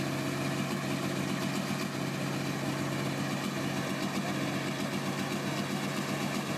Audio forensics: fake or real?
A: real